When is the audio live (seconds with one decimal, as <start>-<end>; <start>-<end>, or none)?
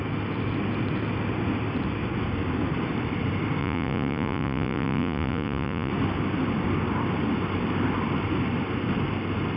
0.0-3.6; 5.9-9.6